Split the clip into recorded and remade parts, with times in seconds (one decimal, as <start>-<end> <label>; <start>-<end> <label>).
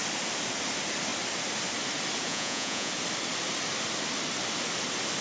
0.0-2.3 recorded; 2.3-2.9 remade; 2.9-5.2 recorded